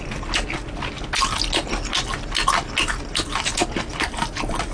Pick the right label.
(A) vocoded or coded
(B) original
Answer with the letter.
B